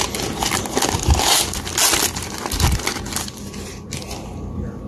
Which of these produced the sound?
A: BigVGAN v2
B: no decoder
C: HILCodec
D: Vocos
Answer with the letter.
B